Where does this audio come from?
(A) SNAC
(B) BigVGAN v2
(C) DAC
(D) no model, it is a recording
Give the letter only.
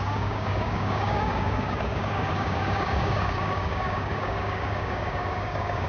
C